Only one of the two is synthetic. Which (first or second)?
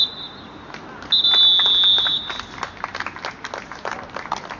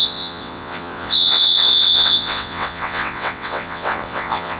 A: second